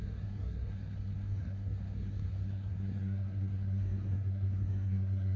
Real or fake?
fake